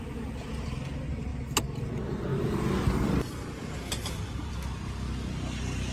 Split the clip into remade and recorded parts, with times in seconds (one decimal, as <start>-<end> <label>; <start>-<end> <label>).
0.0-5.9 recorded